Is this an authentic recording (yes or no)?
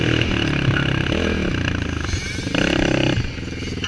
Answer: yes